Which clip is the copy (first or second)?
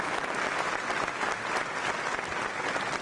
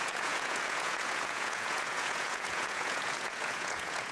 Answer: second